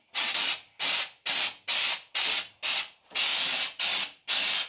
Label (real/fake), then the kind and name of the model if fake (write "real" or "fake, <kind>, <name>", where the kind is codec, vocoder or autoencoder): real